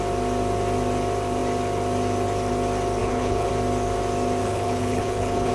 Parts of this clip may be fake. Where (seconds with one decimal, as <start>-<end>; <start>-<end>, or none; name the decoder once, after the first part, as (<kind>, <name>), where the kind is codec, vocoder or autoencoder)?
3.0-3.5 (codec, HILCodec); 4.4-5.5